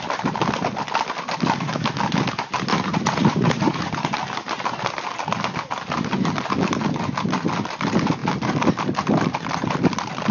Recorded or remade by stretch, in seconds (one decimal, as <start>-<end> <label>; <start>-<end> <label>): 0.0-2.7 recorded; 2.7-3.9 remade; 3.9-10.3 recorded